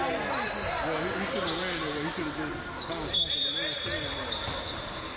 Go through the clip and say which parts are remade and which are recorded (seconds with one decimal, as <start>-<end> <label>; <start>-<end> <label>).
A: 0.0-5.2 recorded